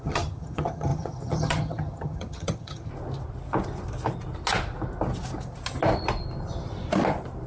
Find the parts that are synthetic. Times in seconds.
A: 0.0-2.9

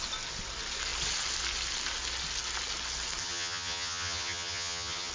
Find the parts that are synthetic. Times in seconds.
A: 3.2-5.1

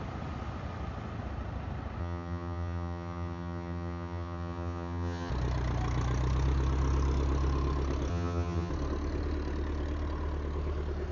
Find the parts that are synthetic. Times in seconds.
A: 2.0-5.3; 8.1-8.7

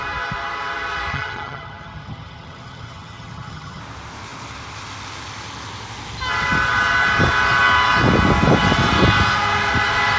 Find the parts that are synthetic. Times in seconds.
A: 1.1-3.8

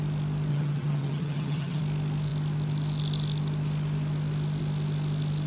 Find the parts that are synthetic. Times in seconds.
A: 0.5-1.8

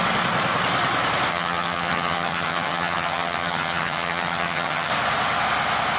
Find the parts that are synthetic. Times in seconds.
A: 1.3-4.9

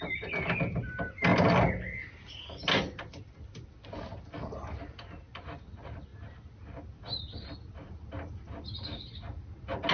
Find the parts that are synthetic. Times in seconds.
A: none

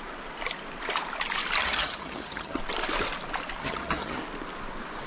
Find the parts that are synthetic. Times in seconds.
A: 1.6-2.6; 3.6-4.2